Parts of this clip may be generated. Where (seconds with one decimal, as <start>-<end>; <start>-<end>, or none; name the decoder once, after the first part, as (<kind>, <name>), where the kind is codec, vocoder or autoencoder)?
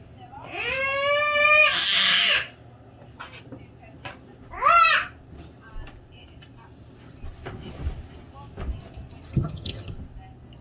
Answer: 9.3-9.9 (vocoder, HiFi-GAN)